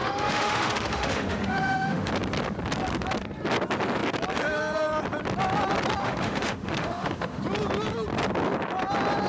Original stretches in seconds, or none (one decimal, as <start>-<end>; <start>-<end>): 2.1-6.0; 7.4-9.3